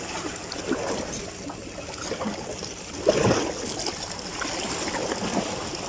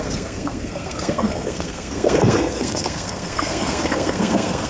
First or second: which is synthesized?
second